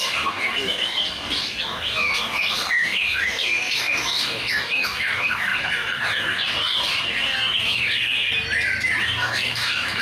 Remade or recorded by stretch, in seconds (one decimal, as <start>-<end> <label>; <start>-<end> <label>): 0.0-8.3 remade; 8.3-9.0 recorded; 9.0-10.0 remade